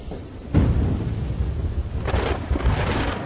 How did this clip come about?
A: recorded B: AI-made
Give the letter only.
B